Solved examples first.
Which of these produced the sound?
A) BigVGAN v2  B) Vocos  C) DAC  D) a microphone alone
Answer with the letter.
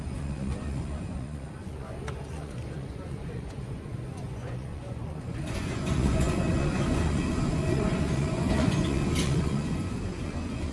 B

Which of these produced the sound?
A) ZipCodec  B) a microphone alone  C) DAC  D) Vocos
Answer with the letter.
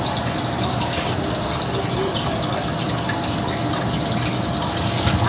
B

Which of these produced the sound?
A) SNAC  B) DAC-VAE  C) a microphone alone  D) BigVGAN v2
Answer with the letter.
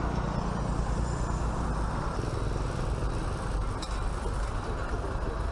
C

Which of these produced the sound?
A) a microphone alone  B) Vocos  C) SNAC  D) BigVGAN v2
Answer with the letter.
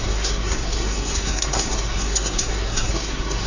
C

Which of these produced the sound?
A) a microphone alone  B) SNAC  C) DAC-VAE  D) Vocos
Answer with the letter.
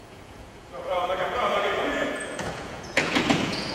D